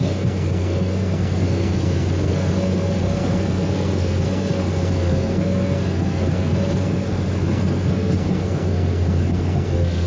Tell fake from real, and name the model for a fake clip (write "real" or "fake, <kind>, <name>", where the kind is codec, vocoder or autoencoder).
fake, codec, SNAC